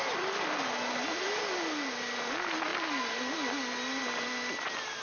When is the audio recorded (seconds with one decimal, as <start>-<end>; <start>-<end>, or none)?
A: 0.0-5.0